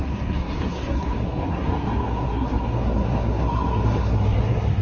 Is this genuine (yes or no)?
no